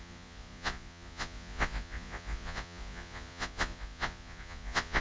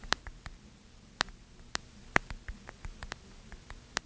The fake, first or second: first